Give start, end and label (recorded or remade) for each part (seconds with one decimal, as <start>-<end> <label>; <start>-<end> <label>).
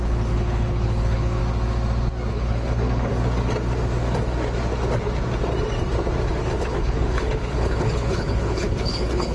0.0-1.4 remade; 1.4-2.3 recorded; 2.3-3.1 remade; 3.1-6.4 recorded; 6.4-9.3 remade